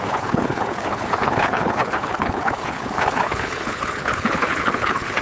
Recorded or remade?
remade